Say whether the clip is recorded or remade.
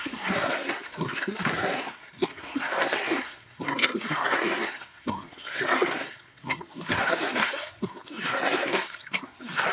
remade